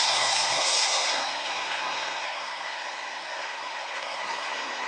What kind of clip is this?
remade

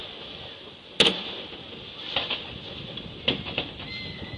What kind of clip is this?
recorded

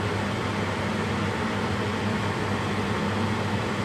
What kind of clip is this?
recorded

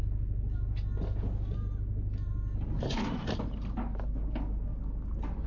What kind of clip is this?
recorded